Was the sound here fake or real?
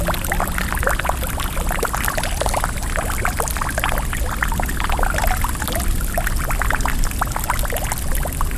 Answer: real